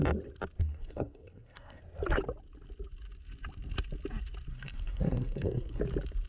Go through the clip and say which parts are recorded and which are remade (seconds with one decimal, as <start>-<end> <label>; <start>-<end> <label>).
0.0-0.6 recorded; 0.6-1.8 remade; 1.8-4.5 recorded; 4.5-5.8 remade; 5.8-6.3 recorded

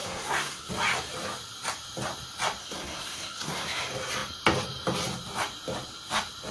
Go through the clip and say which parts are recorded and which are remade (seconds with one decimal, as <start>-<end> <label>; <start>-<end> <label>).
0.0-0.7 remade; 0.7-2.6 recorded; 2.6-3.8 remade; 3.8-6.5 recorded

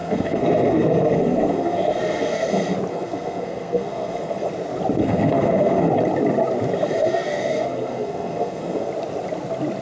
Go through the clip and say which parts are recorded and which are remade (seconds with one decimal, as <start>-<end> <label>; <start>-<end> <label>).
0.0-2.5 remade; 2.5-2.9 recorded; 2.9-4.5 remade; 4.5-5.0 recorded; 5.0-5.9 remade; 5.9-7.1 recorded; 7.1-8.9 remade; 8.9-9.8 recorded

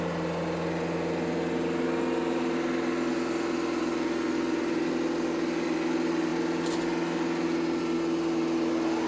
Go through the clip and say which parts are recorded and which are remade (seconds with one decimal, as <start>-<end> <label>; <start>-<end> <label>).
0.0-9.1 recorded

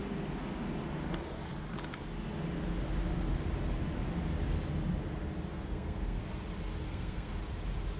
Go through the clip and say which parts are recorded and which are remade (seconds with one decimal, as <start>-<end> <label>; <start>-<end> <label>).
0.0-5.5 recorded; 5.5-6.2 remade; 6.2-6.8 recorded; 6.8-7.3 remade; 7.3-8.0 recorded